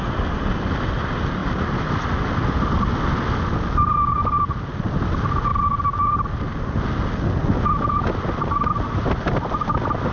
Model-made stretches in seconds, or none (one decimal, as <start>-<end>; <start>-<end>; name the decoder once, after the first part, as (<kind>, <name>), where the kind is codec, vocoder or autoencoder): none